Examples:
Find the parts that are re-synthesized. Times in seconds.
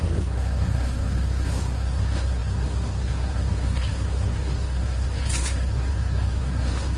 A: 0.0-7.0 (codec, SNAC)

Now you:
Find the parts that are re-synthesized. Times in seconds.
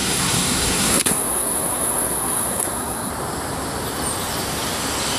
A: 0.0-3.1 (codec, SNAC)